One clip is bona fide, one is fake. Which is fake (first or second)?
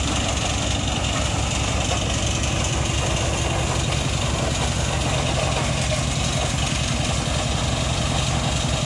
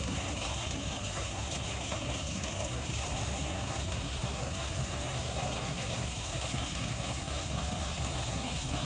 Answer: second